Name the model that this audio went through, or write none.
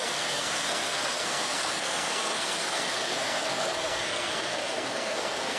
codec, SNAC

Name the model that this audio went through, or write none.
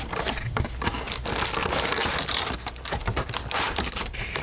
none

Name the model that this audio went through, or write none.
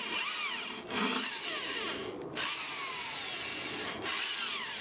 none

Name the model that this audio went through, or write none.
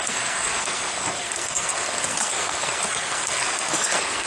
codec, SNAC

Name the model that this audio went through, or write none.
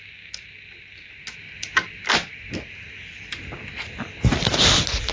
none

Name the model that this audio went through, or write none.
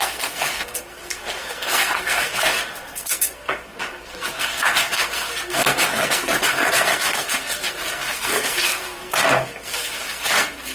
codec, SNAC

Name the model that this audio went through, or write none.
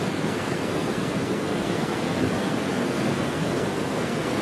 codec, SNAC